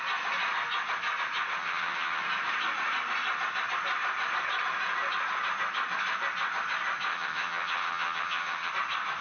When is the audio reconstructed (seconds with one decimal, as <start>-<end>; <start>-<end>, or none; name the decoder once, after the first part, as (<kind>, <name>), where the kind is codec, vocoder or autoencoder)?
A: 1.6-2.2 (vocoder, HiFi-GAN); 7.1-8.7